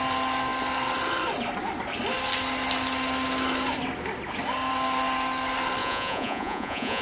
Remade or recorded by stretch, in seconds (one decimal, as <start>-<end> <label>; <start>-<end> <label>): 0.0-5.8 recorded; 5.8-7.0 remade